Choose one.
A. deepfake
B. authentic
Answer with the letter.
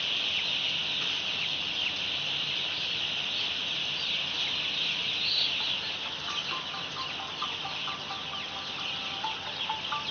B